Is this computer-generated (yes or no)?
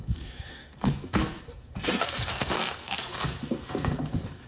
yes